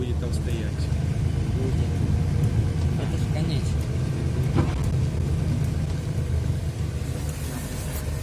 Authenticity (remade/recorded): recorded